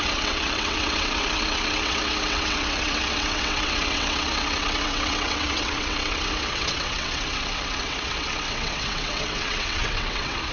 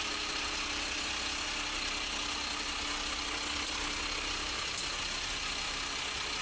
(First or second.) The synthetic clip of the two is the first